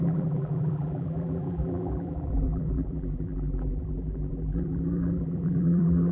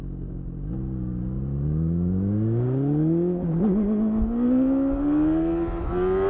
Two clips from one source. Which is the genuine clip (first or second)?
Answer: second